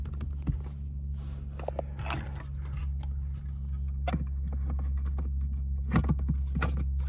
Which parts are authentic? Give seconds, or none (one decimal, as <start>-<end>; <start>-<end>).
0.0-7.1